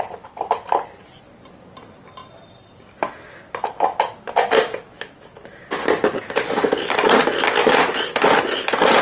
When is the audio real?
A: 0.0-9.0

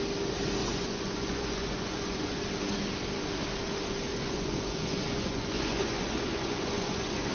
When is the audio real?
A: 0.0-0.6; 2.4-4.1

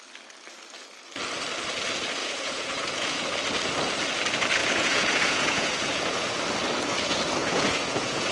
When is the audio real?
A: 0.0-2.2; 3.3-4.6; 6.3-7.4

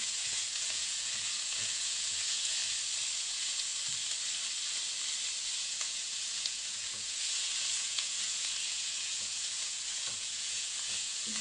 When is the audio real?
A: 2.6-3.2; 3.7-5.5

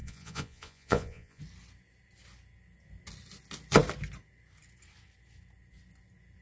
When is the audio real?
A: 1.4-6.4

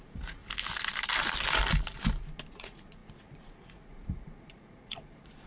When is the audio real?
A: 0.4-2.5